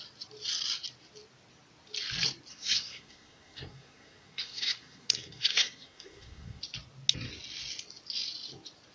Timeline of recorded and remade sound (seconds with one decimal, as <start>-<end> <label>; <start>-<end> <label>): 0.0-2.5 recorded; 2.5-6.6 remade; 6.6-8.9 recorded